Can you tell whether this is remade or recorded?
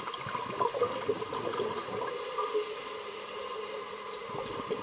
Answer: recorded